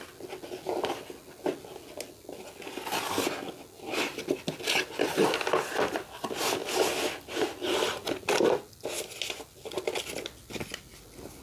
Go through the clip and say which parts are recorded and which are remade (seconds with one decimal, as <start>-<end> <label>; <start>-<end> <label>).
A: 0.0-11.4 recorded